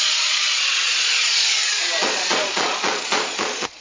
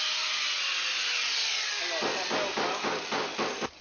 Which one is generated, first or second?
first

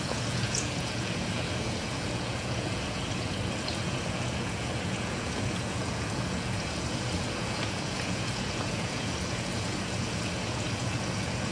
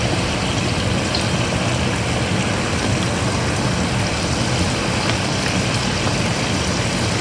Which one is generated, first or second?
first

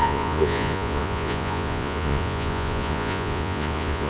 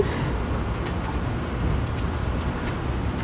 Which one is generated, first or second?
first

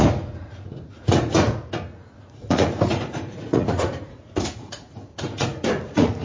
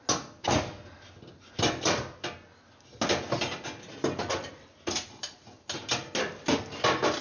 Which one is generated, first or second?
first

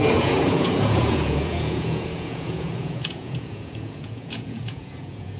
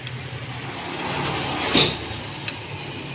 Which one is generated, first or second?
first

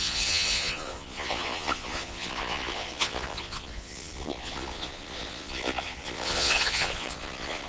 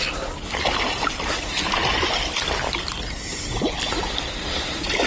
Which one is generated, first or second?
first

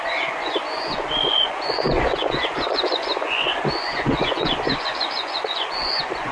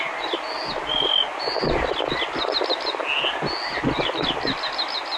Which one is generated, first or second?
first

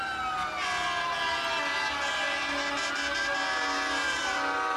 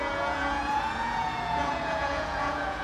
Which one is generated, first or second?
second